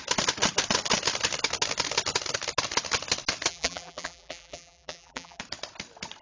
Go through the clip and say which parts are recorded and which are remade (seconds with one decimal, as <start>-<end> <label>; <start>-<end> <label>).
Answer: 0.0-3.5 recorded; 3.5-5.4 remade; 5.4-6.2 recorded